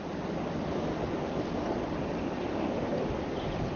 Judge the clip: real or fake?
real